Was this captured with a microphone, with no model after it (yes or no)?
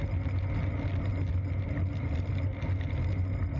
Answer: yes